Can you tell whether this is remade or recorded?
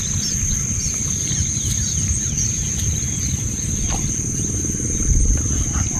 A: recorded